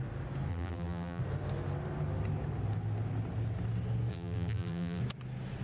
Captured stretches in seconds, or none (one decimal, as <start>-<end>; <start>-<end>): 0.0-0.5; 1.2-4.1; 5.0-5.6